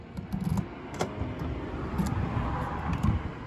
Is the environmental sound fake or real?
real